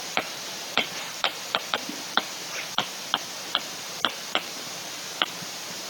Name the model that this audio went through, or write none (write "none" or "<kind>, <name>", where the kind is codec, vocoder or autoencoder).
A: vocoder, BigVGAN v2